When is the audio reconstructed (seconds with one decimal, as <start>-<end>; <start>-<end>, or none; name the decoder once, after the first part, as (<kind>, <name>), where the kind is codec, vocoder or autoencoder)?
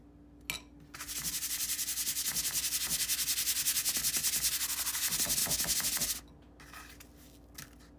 none